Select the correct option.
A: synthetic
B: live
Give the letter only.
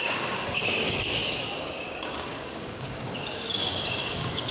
A